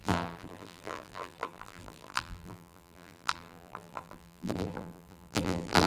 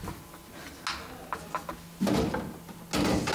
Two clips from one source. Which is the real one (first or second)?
second